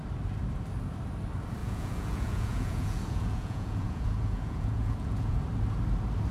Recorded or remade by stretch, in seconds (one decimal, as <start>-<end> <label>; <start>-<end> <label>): 0.0-1.6 recorded; 1.6-5.4 remade; 5.4-6.3 recorded